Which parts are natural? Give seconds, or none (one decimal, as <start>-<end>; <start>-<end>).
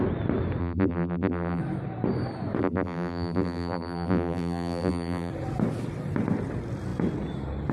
0.0-0.6; 1.6-2.6; 5.3-7.7